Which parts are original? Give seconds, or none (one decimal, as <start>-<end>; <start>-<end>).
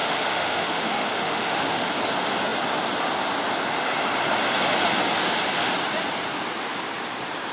1.9-7.5